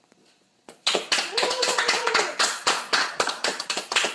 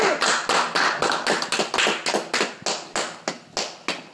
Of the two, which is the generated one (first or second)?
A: first